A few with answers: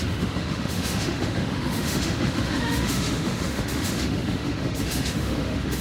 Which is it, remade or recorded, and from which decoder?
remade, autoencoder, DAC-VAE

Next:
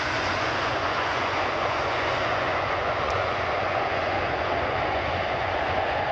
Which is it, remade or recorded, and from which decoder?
remade, vocoder, Vocos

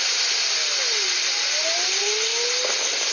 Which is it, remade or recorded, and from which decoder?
recorded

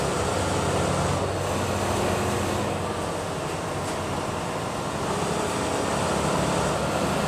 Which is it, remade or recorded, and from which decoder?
recorded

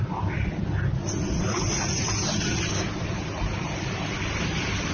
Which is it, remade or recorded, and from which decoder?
recorded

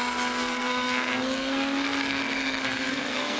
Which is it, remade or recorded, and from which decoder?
remade, codec, SNAC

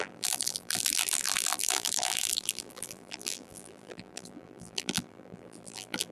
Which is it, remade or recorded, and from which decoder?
remade, vocoder, BigVGAN v2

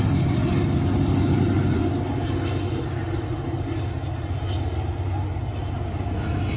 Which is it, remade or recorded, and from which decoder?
recorded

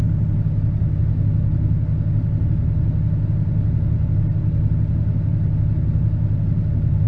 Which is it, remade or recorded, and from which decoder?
recorded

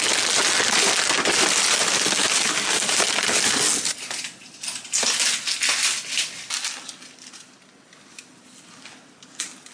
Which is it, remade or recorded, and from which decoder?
recorded